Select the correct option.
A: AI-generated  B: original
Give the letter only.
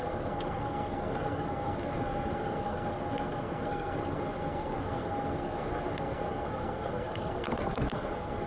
A